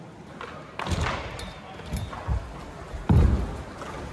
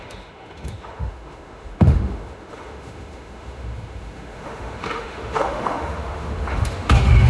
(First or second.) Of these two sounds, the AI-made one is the second